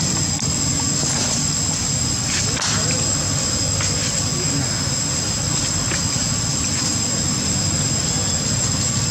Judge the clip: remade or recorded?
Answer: recorded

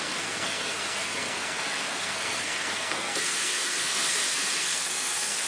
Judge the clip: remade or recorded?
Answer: remade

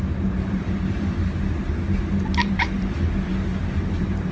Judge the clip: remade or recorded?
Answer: remade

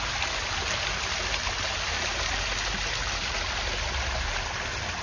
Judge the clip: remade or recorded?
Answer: recorded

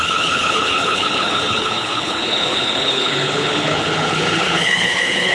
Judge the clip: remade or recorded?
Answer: remade